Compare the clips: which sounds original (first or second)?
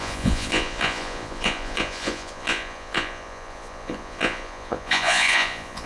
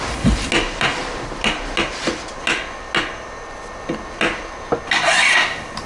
second